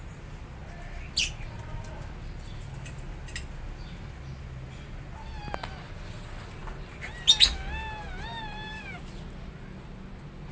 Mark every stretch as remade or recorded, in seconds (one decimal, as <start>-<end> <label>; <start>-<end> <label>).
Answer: 0.0-10.5 recorded